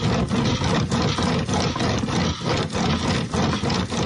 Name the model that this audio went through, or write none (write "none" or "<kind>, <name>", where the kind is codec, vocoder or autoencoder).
none